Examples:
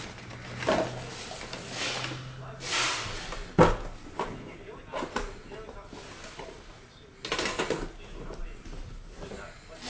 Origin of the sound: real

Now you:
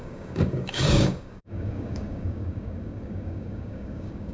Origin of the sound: fake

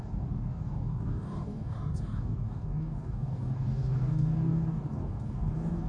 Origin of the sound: fake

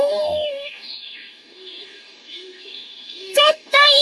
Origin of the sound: fake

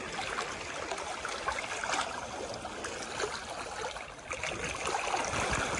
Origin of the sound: real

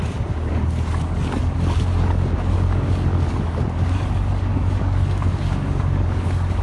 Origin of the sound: fake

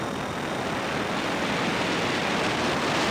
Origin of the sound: real